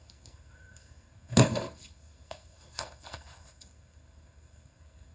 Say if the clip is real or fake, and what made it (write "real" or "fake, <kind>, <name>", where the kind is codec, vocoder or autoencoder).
fake, codec, SNAC